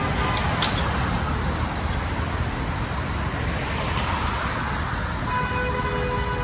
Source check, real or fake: real